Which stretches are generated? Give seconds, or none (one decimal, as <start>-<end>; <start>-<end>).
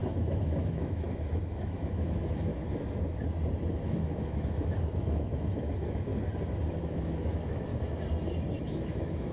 0.0-2.5; 3.7-6.1; 6.8-7.7; 8.6-9.3